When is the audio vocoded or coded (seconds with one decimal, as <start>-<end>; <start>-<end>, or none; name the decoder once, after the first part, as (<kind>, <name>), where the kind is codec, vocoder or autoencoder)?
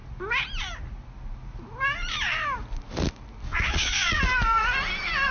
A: 3.5-4.2 (vocoder, Vocos)